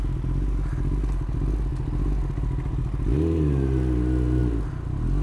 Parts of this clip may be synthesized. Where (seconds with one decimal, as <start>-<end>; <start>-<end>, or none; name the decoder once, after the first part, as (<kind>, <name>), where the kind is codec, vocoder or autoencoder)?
none